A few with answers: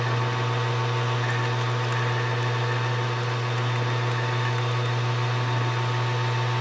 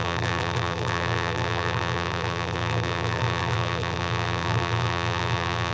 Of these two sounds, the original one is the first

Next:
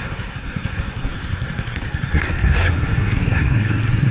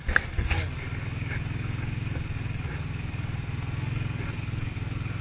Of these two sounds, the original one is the second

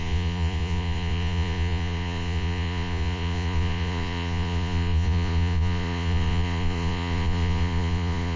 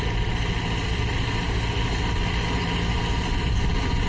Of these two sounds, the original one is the second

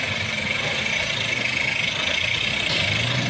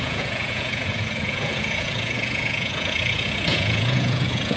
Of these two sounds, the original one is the first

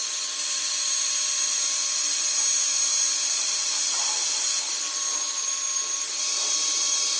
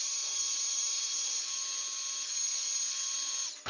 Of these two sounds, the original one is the second